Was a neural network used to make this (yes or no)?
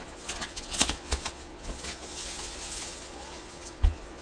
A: yes